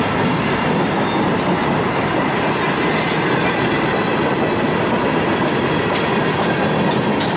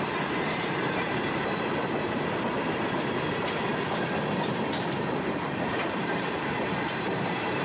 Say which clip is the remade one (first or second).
second